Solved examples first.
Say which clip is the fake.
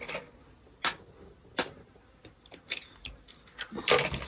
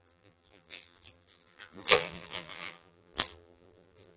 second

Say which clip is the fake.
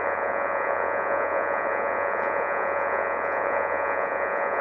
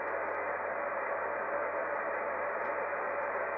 first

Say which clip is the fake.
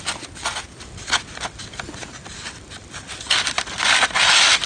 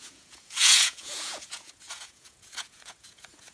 second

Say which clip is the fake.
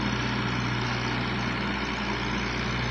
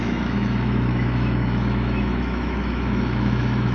second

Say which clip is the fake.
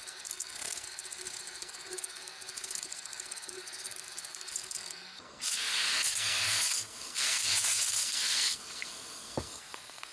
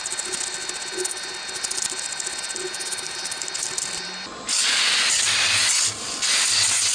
first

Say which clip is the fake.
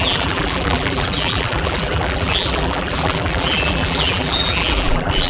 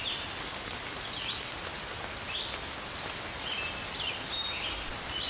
first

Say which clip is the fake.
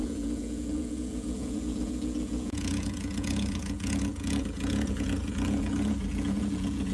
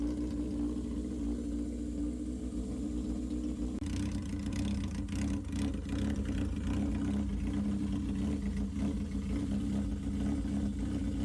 first